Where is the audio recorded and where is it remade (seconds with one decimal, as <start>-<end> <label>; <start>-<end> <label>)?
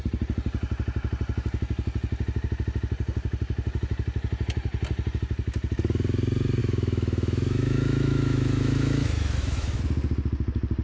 0.0-6.6 recorded; 6.6-9.8 remade; 9.8-10.8 recorded